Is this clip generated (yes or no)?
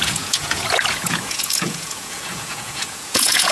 yes